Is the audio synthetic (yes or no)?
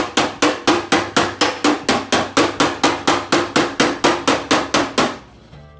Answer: no